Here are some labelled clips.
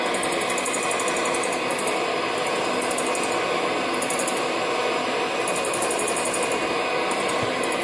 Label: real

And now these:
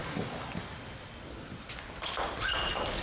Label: real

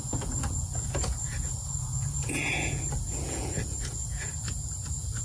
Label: fake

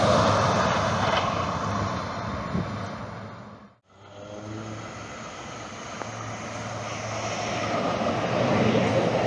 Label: real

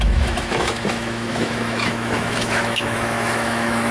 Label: fake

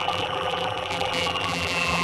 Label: fake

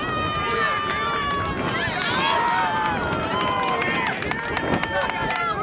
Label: real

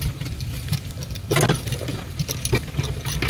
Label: real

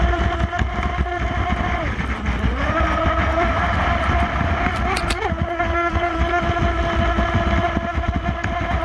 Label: real